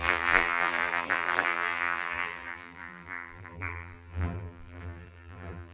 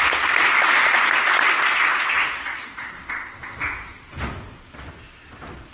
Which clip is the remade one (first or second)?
first